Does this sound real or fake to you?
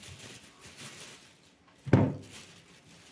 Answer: real